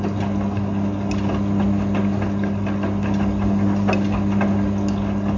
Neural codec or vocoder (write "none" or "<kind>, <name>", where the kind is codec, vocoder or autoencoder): none